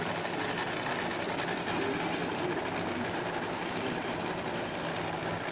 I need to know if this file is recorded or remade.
recorded